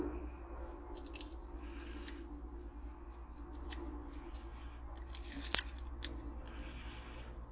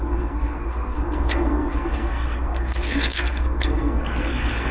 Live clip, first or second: first